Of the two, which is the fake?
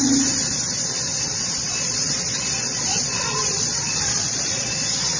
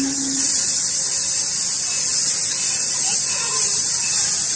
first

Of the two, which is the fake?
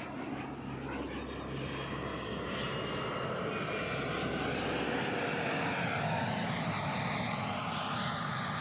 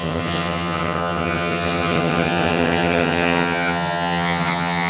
second